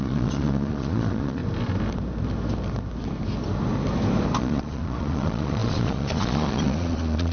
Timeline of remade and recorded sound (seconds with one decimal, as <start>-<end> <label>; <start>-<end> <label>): 0.0-1.4 remade; 1.4-4.4 recorded; 4.4-7.3 remade